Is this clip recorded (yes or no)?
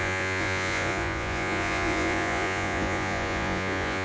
no